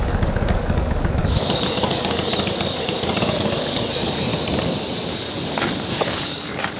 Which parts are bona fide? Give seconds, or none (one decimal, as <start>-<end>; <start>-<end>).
4.3-5.2